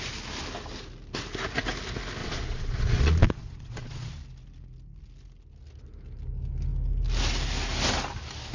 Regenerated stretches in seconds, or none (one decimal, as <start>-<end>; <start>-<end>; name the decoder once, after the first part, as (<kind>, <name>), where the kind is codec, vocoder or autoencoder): 2.2-4.1 (vocoder, Vocos)